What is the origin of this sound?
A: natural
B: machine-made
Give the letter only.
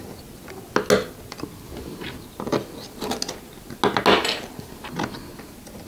A